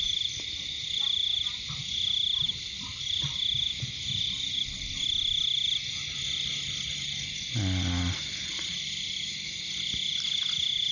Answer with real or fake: real